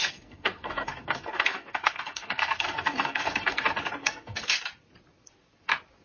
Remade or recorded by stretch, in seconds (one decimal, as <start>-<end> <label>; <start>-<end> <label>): 0.0-3.6 remade; 3.6-4.0 recorded; 4.0-4.6 remade; 4.6-6.0 recorded